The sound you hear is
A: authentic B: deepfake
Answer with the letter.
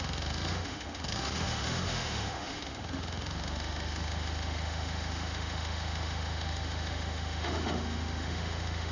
B